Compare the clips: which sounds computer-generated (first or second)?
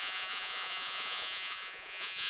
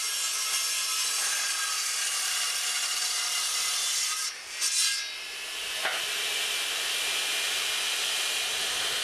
first